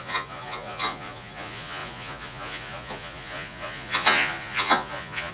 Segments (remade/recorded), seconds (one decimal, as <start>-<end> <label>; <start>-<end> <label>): 0.0-5.3 remade